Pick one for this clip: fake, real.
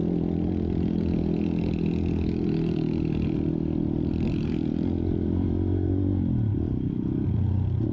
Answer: real